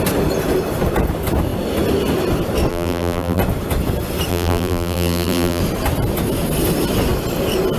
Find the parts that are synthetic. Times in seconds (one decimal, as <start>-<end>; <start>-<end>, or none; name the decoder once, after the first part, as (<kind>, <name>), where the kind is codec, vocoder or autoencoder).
2.7-3.4 (vocoder, BigVGAN v2); 4.3-5.6